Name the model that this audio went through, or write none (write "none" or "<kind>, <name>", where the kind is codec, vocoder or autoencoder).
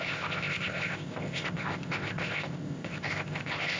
codec, ZipCodec